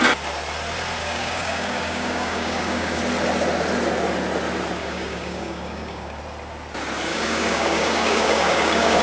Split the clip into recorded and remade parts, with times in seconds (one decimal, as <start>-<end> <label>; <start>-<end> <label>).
0.0-1.0 recorded; 1.0-3.0 remade; 3.0-4.8 recorded; 4.8-6.2 remade; 6.2-7.1 recorded; 7.1-9.0 remade